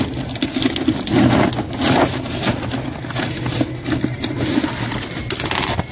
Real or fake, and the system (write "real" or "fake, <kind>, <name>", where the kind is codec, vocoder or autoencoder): real